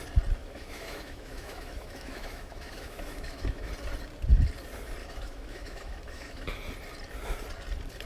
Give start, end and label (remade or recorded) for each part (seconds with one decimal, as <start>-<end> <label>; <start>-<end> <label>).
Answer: 0.0-0.4 recorded; 0.4-3.7 remade; 3.7-5.0 recorded; 5.0-6.6 remade; 6.6-8.1 recorded